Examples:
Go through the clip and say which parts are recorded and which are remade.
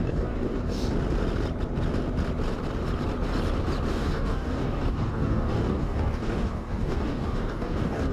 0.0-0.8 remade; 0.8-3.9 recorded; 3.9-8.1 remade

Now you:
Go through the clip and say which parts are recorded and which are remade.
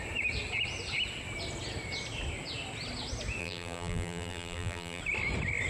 0.0-3.4 recorded; 3.4-5.0 remade; 5.0-5.7 recorded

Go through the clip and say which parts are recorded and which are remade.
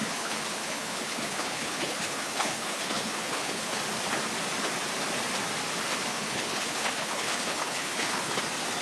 0.0-3.8 remade; 3.8-6.1 recorded; 6.1-8.4 remade; 8.4-8.8 recorded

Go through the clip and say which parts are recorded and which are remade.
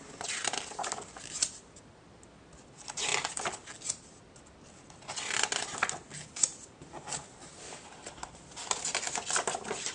0.0-9.9 recorded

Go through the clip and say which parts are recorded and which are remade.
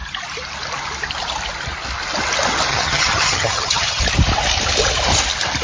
0.0-2.7 recorded; 2.7-4.0 remade; 4.0-5.6 recorded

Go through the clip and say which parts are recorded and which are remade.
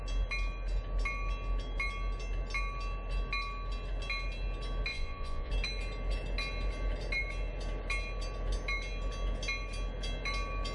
0.0-4.9 recorded; 4.9-5.5 remade; 5.5-10.7 recorded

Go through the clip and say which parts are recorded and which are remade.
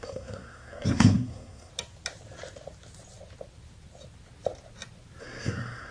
0.0-1.7 remade; 1.7-5.2 recorded; 5.2-5.9 remade